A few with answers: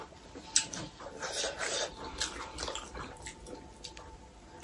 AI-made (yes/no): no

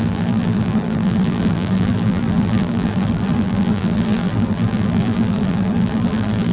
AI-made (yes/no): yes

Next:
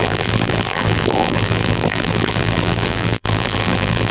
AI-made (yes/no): yes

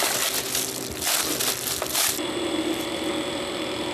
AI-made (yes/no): yes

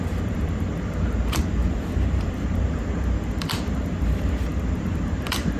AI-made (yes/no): yes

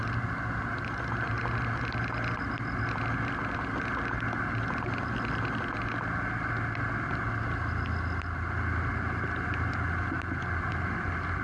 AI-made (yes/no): no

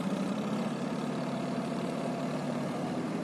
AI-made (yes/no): yes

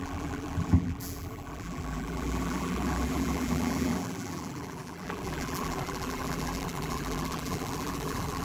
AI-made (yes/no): yes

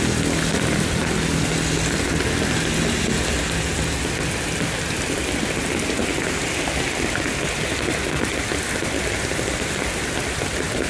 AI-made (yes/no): no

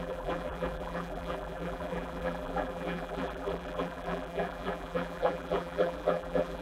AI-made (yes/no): yes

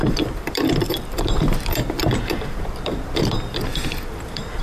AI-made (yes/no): yes